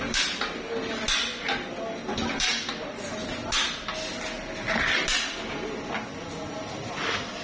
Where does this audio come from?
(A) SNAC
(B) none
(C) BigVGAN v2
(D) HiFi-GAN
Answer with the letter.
B